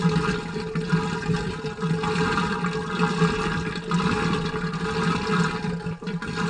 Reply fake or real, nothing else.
real